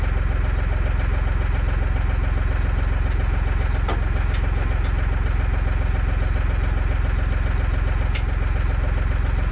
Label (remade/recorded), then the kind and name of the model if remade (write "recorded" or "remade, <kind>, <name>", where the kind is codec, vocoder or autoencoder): recorded